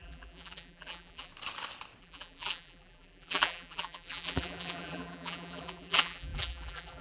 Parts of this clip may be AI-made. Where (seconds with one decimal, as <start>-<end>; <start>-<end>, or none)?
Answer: 0.0-1.3; 2.0-7.0